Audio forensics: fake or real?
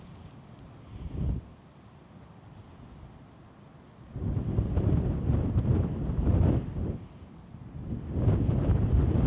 real